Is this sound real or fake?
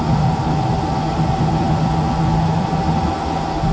real